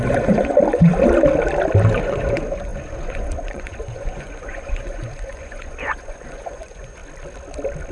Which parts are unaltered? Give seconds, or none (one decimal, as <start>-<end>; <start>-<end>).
0.9-2.0; 7.0-7.9